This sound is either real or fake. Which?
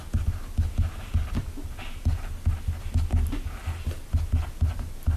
real